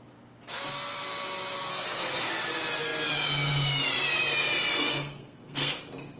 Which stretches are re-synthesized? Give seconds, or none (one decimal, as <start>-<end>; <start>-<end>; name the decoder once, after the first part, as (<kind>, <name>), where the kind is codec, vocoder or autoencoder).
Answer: 1.7-2.3 (codec, SNAC); 4.9-5.8

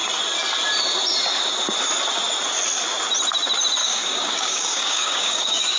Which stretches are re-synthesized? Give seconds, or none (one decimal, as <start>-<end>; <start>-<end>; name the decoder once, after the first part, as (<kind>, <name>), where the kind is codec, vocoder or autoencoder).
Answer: 3.8-5.8 (codec, DAC)

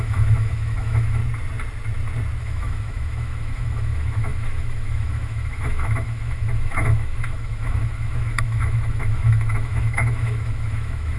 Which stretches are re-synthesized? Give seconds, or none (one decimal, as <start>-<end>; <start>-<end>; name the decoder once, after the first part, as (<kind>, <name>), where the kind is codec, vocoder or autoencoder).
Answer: 0.0-1.2 (autoencoder, DAC-VAE); 2.4-11.2